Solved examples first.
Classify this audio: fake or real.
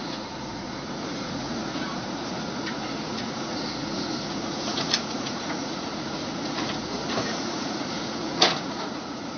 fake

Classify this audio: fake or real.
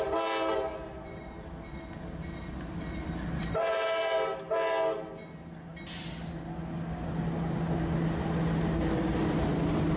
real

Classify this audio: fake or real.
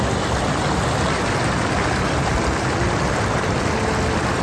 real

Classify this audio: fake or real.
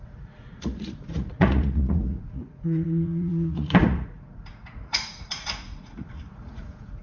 fake